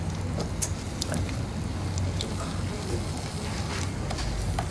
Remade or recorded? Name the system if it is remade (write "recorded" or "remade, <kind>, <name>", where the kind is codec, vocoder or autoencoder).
recorded